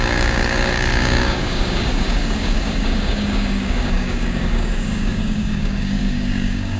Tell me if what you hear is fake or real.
fake